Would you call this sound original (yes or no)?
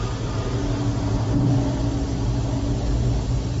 yes